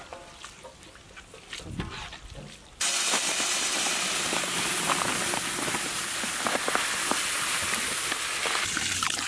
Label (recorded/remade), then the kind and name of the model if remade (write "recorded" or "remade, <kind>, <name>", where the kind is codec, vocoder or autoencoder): recorded